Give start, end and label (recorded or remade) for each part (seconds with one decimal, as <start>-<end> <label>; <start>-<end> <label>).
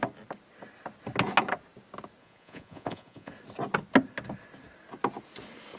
0.0-2.2 recorded; 2.2-3.3 remade; 3.3-5.8 recorded